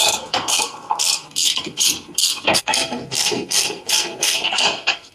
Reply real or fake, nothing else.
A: fake